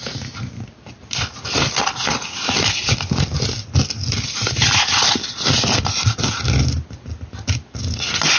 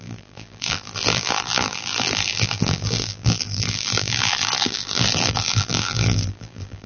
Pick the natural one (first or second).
first